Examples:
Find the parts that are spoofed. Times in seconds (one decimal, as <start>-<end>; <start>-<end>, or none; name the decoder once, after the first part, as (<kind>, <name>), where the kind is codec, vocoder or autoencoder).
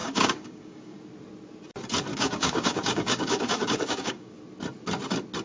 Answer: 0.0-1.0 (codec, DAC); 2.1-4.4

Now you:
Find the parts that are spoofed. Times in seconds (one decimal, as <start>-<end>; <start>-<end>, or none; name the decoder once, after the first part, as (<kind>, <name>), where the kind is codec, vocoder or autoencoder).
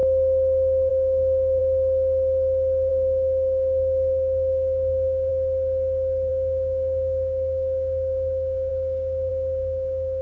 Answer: 0.9-1.6 (codec, DAC); 2.9-5.3; 6.3-10.2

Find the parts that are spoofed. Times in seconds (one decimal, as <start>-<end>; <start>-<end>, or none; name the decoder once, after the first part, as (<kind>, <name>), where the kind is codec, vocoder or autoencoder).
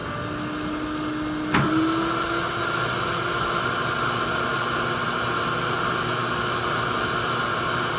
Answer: none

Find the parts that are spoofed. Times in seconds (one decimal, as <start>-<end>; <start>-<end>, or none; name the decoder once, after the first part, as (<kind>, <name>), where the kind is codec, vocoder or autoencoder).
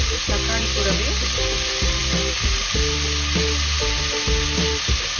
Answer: none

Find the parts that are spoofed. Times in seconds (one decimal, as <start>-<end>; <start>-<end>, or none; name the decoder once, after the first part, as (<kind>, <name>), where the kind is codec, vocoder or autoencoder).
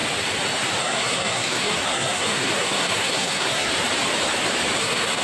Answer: 0.8-3.7 (codec, SNAC); 4.8-5.2